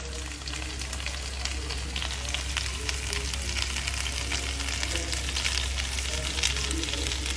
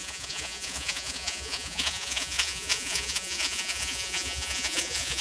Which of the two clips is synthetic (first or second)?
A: second